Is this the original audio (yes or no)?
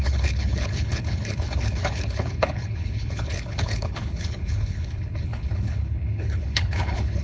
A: no